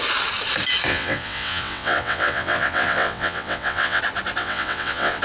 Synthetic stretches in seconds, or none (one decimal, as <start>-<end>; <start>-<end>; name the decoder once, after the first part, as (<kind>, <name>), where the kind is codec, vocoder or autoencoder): 0.9-4.0 (vocoder, WaveNeXt); 4.4-5.2